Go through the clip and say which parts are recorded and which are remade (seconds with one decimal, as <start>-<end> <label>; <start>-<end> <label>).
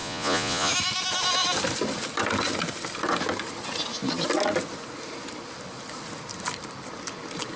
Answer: 0.0-0.7 remade; 0.7-7.6 recorded